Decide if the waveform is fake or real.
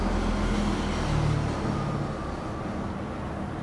real